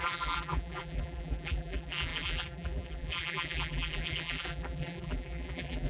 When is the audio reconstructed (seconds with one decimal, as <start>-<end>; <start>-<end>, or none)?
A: 0.0-5.9